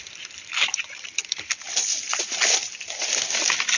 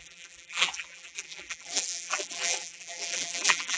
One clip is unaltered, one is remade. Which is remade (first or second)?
second